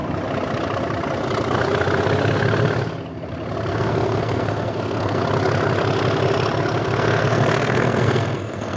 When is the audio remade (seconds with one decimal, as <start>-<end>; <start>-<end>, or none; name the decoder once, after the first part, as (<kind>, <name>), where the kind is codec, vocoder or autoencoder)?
3.7-5.2 (codec, SNAC); 6.8-8.8